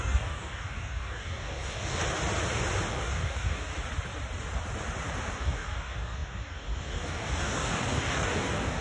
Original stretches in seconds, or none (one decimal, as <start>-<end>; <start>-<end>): 2.0-2.9; 3.7-5.3

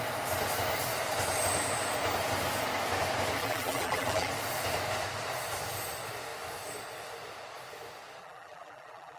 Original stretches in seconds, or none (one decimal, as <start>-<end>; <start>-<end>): 0.0-3.4; 4.3-8.2

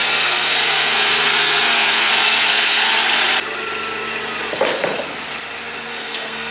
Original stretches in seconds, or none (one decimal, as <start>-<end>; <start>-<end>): 2.9-5.9

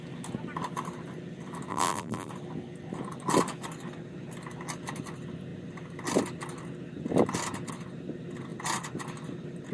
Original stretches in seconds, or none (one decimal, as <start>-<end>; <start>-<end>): 0.0-1.7; 2.3-9.7

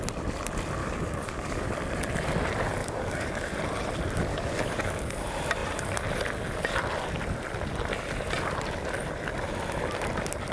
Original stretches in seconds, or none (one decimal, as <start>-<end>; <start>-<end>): 0.0-0.8; 1.7-2.8; 3.6-4.3; 5.0-10.5

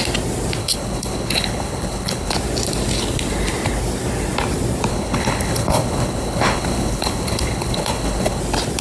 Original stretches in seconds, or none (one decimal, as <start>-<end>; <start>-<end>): 0.0-0.6; 2.3-4.9; 8.4-8.8

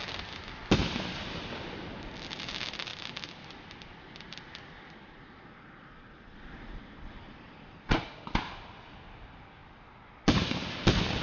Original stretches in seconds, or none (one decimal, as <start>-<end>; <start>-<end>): 0.0-0.8; 1.5-2.9; 7.7-11.2

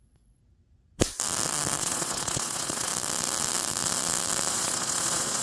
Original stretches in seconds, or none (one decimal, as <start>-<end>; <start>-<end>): 0.4-1.8; 2.9-4.5